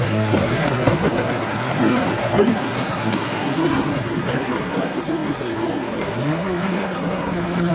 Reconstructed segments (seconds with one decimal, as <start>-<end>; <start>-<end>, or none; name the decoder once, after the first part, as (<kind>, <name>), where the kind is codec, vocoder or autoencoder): 0.0-7.7 (codec, SNAC)

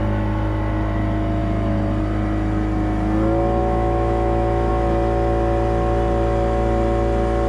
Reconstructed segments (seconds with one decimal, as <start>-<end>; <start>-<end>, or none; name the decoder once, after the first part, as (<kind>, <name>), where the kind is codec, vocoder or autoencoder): 3.6-4.7 (autoencoder, DAC-VAE)

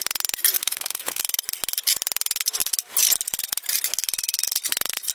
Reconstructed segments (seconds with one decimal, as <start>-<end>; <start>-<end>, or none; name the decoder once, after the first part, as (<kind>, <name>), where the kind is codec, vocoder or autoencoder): 0.6-1.2 (codec, SNAC)

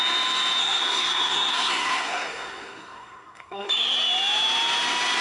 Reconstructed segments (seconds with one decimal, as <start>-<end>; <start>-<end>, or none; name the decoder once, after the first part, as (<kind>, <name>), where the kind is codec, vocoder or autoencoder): 0.6-3.7 (codec, SNAC)

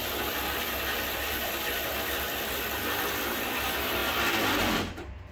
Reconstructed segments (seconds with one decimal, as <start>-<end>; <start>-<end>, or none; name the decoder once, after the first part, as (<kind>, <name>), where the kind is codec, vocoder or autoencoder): 0.6-4.0 (vocoder, BigVGAN v2); 4.6-5.3